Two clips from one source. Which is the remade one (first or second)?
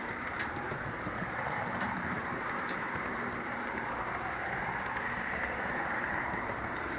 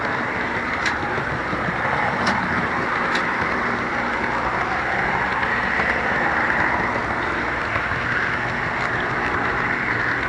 first